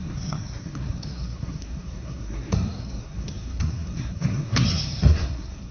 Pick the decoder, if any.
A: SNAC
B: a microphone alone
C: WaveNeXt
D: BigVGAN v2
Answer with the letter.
A